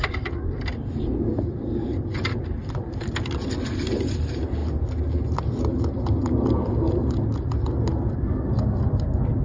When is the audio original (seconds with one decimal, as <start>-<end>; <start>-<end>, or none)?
0.0-9.4

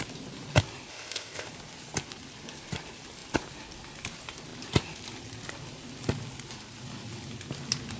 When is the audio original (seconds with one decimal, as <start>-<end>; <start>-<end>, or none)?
0.0-0.9; 1.5-8.0

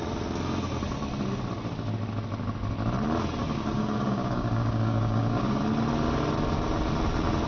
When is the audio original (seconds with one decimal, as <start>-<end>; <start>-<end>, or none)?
0.0-3.4; 5.6-7.5